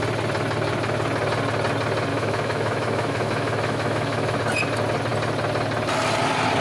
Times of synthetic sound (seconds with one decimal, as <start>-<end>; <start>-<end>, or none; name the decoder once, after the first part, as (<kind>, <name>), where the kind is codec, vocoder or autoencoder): 2.1-4.4 (autoencoder, DAC-VAE)

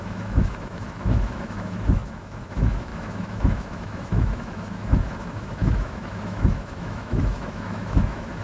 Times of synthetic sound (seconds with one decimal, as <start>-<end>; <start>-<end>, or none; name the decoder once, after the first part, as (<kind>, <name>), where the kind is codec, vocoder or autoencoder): 0.0-8.4 (autoencoder, DAC-VAE)

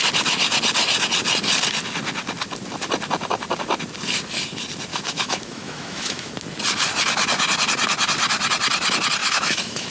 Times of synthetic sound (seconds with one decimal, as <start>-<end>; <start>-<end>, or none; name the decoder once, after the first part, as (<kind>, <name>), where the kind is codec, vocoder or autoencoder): 4.9-6.3 (autoencoder, DAC-VAE); 9.2-9.9

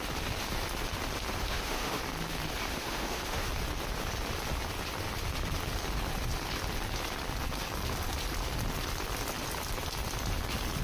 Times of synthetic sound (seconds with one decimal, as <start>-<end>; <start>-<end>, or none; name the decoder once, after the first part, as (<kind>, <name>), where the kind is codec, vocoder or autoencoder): 1.4-2.0 (autoencoder, DAC-VAE); 2.7-3.5

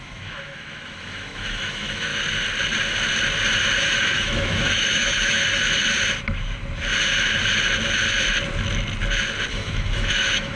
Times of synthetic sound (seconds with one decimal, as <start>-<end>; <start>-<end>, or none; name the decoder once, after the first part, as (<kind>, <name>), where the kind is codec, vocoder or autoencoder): 0.0-2.1 (autoencoder, DAC-VAE); 3.8-5.4; 9.5-10.6